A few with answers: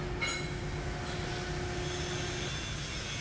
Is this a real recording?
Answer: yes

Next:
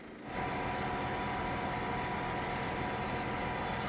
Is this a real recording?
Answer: yes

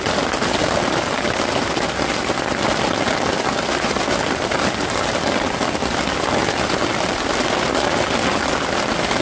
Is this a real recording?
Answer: yes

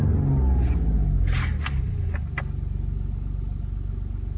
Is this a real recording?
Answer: yes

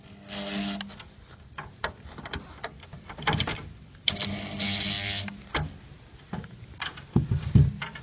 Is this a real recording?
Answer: yes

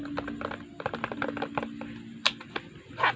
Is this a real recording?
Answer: yes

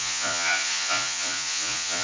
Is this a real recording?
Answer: no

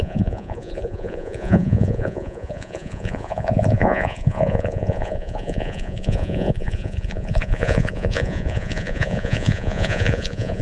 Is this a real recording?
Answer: no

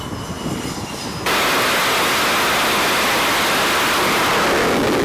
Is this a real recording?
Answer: yes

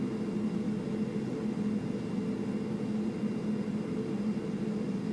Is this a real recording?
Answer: yes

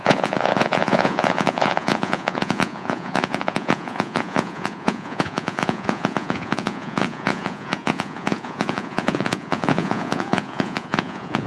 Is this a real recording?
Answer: no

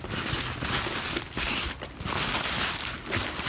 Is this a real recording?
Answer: yes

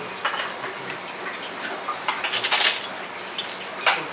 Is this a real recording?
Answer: yes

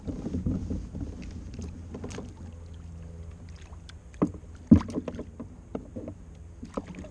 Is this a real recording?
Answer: yes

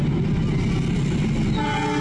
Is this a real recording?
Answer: yes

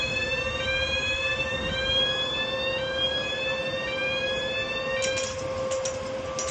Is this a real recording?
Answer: yes